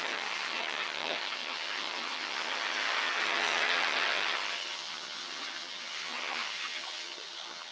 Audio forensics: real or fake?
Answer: fake